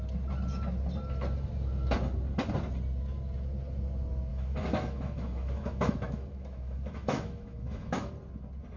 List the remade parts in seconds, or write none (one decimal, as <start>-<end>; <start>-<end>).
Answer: 4.3-8.1